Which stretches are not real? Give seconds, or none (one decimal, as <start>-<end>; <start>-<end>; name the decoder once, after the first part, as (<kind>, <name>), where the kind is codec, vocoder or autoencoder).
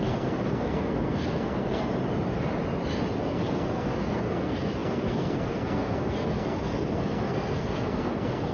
0.0-1.9 (codec, SNAC); 3.2-8.5